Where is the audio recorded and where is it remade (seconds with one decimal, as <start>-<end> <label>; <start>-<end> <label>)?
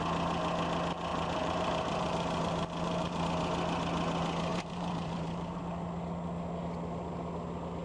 0.0-1.1 recorded; 1.1-3.2 remade; 3.2-4.5 recorded; 4.5-5.6 remade; 5.6-7.8 recorded